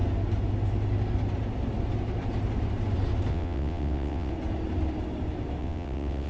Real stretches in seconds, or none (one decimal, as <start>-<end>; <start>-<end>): 0.0-3.3; 4.3-5.6